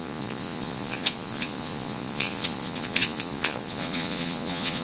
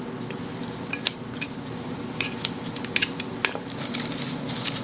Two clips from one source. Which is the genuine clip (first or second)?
second